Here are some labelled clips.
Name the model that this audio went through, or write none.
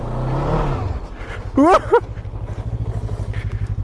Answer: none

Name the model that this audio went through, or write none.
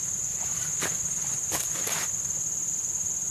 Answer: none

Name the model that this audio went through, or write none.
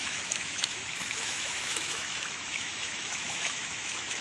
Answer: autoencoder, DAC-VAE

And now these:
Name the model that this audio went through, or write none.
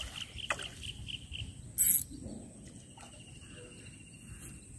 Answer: none